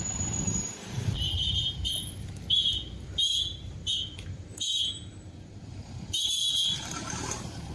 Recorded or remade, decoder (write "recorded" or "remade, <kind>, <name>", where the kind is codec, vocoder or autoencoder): remade, vocoder, BigVGAN v2